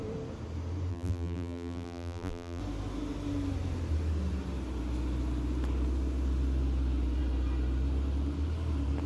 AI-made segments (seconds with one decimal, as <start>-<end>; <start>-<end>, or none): 0.9-2.6

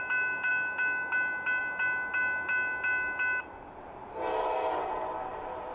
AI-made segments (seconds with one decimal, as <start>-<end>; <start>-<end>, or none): none

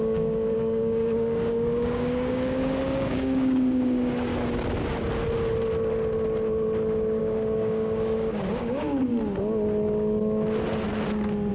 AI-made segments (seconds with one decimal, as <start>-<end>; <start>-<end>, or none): 0.0-4.3; 7.2-9.1

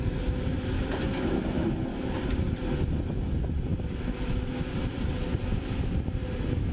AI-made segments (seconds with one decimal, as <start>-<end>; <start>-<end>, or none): none

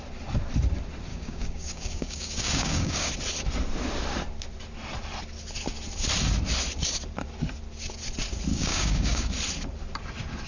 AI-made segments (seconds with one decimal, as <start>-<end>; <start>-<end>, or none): 1.1-3.1; 8.5-9.3

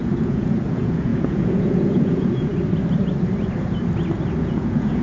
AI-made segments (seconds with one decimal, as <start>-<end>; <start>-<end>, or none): 0.0-2.5; 4.4-5.0